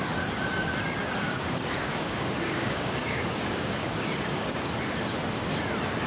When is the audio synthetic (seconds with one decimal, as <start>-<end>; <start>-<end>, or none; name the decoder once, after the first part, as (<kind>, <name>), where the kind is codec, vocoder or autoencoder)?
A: 1.0-4.7 (codec, DAC)